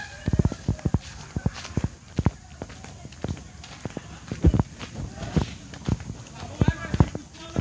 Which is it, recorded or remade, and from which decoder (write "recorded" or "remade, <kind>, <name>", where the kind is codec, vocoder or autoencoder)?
recorded